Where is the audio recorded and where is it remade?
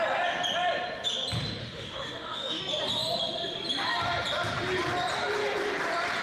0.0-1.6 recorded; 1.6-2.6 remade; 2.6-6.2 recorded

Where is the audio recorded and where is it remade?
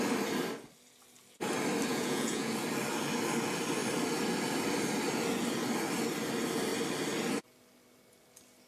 0.0-1.9 recorded; 1.9-2.5 remade; 2.5-8.7 recorded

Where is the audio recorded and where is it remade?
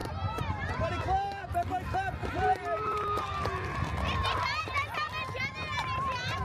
0.0-0.7 remade; 0.7-2.2 recorded; 2.2-3.2 remade; 3.2-6.4 recorded